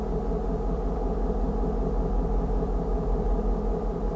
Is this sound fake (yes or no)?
no